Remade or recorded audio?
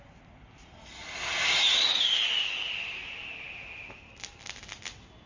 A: recorded